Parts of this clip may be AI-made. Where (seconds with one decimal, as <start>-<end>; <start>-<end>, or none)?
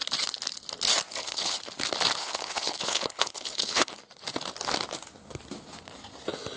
1.1-1.6; 2.2-4.0